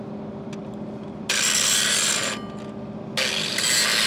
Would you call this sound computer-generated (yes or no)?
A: no